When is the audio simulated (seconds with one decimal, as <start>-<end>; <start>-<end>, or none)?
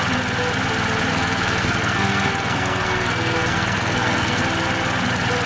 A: 1.1-4.4